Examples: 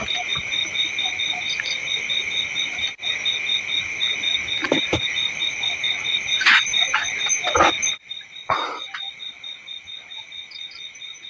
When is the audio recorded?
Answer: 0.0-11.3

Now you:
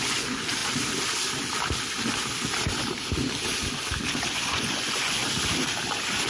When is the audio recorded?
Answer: 0.6-4.3; 5.2-6.3

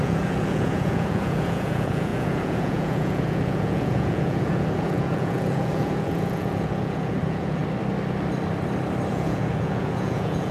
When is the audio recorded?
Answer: 7.6-9.1

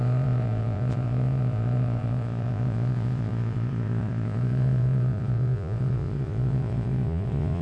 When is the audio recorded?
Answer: none

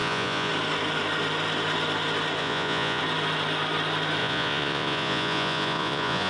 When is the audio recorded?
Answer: 0.5-2.4; 3.0-4.2

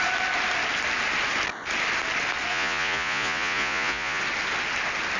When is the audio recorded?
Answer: 0.0-2.5; 4.2-5.2